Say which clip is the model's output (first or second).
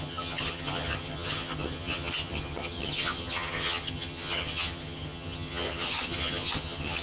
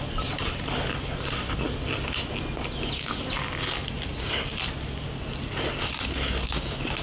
first